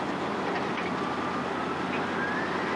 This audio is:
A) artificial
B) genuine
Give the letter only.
B